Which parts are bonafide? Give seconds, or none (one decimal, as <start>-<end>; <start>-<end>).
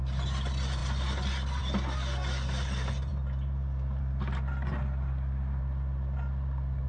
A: 0.0-6.9